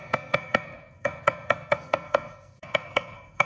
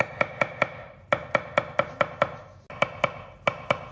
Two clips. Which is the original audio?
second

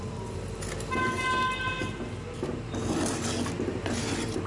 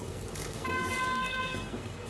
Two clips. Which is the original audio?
first